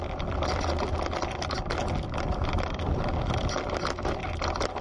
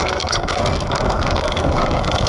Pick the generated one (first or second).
second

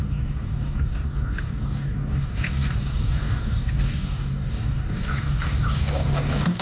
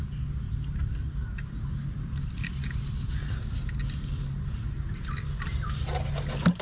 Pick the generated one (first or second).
first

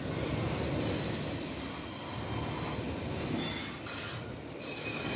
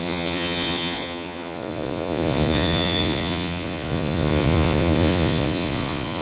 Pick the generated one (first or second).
second